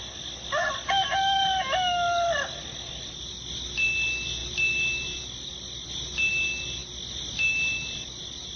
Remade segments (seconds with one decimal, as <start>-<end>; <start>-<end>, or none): none